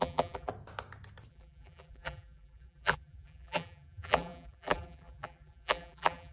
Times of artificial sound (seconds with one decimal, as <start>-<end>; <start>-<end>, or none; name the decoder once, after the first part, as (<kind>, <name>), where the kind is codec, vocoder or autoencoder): 0.0-0.5 (vocoder, BigVGAN v2); 1.3-6.3